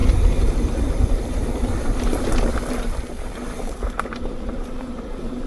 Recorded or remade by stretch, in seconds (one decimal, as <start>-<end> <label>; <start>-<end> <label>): 0.0-5.5 remade